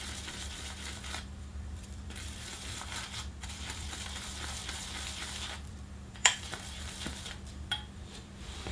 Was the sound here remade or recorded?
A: remade